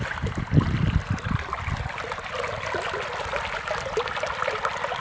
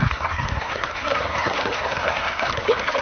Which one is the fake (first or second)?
second